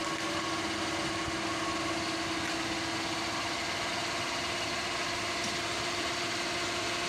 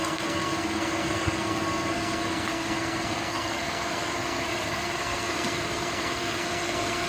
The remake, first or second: second